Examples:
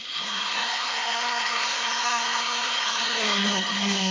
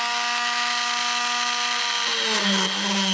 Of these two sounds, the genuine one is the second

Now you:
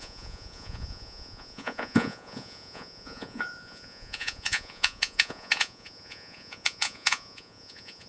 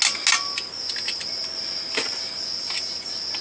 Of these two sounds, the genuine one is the second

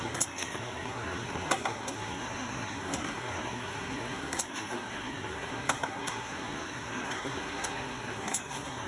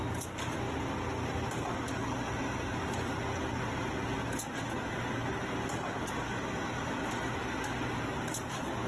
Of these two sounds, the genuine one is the second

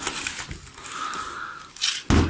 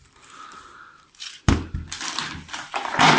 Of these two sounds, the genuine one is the first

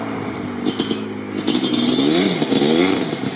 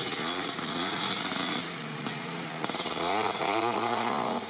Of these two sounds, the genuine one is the first